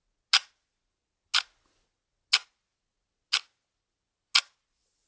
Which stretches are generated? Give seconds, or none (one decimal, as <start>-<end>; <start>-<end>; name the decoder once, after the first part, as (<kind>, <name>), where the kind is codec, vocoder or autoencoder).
none